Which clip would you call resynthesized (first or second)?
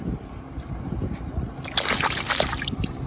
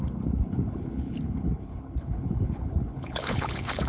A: second